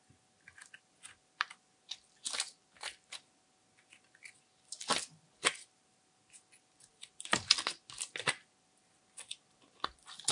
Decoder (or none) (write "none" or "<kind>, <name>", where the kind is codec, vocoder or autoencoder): none